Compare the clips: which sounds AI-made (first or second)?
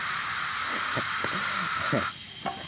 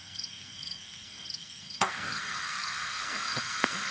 second